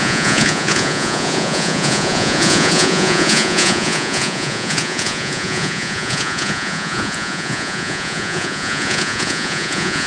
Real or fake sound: fake